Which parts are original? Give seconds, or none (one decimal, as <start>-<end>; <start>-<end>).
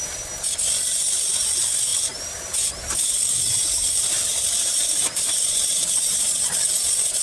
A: 0.0-1.9; 6.2-7.2